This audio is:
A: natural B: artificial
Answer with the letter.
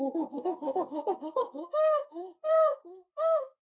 B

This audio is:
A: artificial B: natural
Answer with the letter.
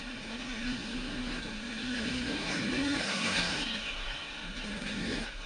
A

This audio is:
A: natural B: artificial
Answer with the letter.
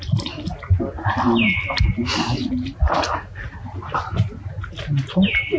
A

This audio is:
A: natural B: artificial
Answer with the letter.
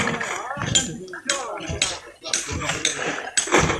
A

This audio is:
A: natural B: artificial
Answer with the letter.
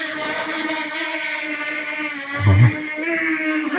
B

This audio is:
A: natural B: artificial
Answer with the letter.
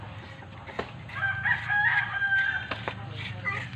A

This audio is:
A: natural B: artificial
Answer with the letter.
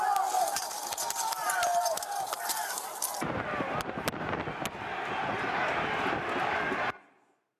A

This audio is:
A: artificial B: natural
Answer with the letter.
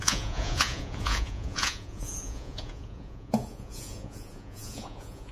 A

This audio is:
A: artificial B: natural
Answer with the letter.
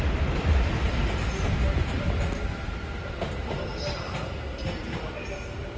B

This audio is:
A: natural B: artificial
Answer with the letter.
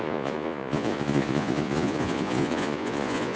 B